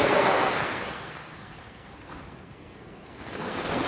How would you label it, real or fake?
fake